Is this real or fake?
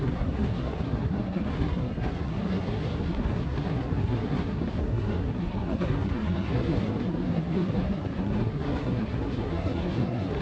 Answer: fake